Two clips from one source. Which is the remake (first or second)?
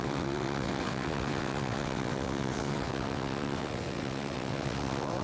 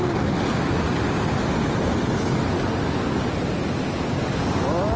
first